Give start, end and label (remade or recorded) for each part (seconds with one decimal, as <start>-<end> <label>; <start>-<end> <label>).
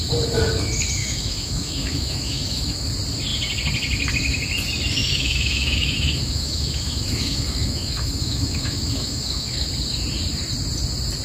0.0-1.0 recorded; 1.0-2.9 remade; 2.9-5.0 recorded; 5.0-9.7 remade; 9.7-11.2 recorded